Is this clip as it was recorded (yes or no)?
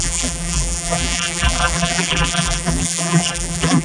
no